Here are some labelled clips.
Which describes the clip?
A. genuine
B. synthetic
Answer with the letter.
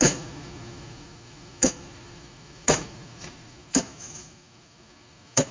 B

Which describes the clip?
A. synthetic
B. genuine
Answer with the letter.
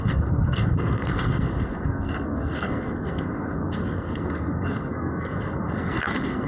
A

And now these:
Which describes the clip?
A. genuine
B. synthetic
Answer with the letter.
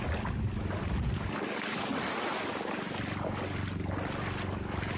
A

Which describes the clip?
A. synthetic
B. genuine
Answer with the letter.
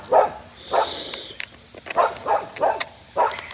B